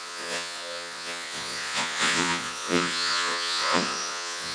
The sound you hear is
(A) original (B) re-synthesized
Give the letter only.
B